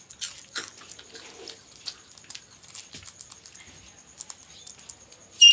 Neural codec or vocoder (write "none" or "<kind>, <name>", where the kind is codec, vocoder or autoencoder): none